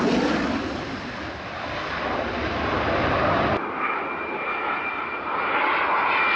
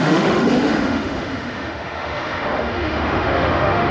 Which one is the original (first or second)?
first